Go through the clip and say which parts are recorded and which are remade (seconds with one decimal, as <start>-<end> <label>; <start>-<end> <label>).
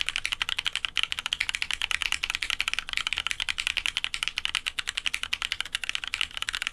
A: 0.0-6.7 recorded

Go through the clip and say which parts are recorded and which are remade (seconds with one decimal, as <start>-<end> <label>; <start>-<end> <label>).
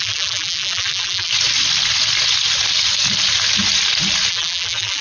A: 0.0-1.3 remade; 1.3-4.3 recorded; 4.3-5.0 remade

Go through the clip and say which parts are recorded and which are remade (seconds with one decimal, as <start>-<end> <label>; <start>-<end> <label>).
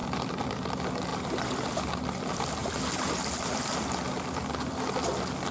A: 0.0-5.5 recorded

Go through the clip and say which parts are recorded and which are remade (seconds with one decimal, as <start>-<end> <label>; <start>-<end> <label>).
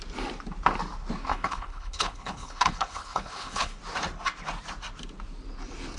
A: 0.0-1.3 recorded; 1.3-3.8 remade; 3.8-6.0 recorded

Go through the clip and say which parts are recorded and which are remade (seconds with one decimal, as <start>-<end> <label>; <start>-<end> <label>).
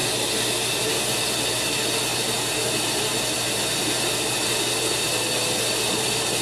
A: 0.0-6.4 recorded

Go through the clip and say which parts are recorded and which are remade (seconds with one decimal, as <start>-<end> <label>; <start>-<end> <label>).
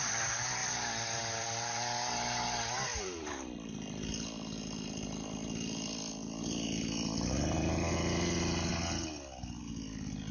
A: 0.0-8.7 remade; 8.7-9.6 recorded; 9.6-10.3 remade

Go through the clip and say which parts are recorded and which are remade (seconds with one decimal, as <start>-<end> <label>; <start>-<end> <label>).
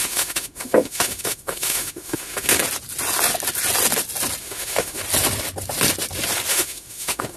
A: 0.0-2.6 remade; 2.6-4.4 recorded; 4.4-5.0 remade; 5.0-6.5 recorded; 6.5-7.4 remade